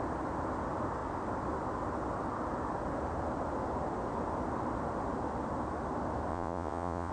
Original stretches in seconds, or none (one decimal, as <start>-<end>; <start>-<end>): 0.0-6.3